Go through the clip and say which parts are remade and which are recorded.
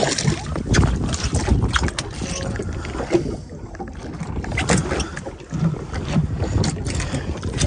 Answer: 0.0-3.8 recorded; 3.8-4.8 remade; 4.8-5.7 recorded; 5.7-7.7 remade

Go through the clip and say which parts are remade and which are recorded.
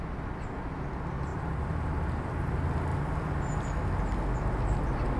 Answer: 0.0-1.3 recorded; 1.3-2.3 remade; 2.3-2.9 recorded; 2.9-3.7 remade; 3.7-5.2 recorded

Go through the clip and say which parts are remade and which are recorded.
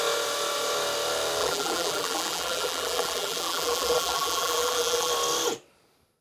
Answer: 0.0-1.4 recorded; 1.4-5.1 remade; 5.1-6.2 recorded